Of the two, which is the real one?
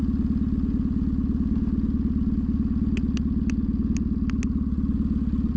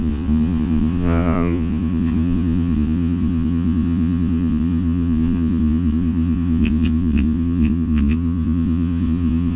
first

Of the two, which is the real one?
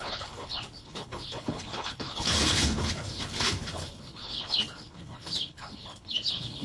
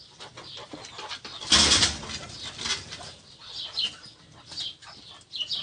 second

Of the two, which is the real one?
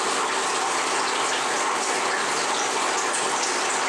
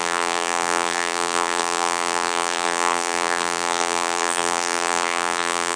first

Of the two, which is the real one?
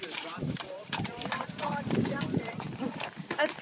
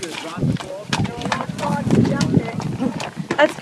second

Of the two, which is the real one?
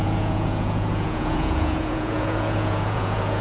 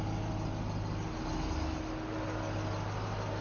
second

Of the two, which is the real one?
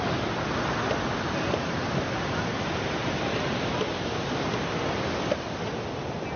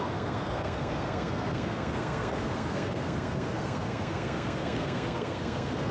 first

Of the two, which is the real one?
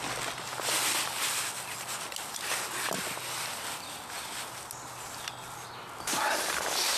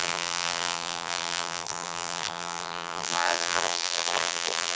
first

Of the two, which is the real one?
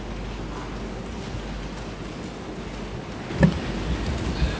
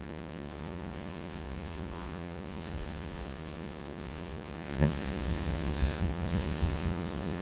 first